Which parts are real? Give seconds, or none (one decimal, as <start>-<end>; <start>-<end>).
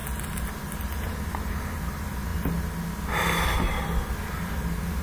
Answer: 0.0-5.0